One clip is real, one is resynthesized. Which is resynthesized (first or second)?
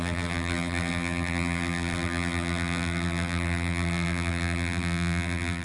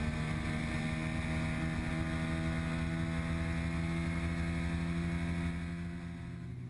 first